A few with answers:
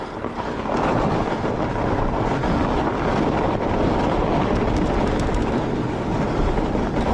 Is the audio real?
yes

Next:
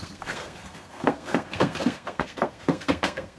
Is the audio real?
no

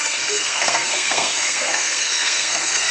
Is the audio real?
no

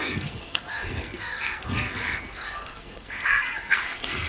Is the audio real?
no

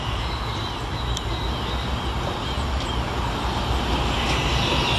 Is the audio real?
yes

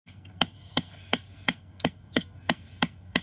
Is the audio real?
no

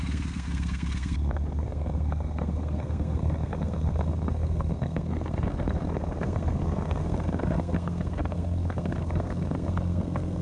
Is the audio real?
no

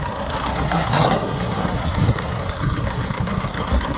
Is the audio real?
no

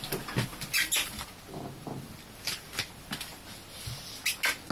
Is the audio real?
yes